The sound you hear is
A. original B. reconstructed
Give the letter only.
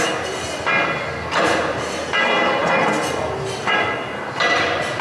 A